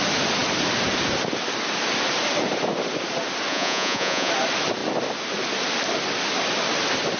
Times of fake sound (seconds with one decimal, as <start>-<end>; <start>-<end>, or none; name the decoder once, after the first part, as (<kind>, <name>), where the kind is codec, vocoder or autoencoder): 3.5-4.3 (vocoder, Vocos)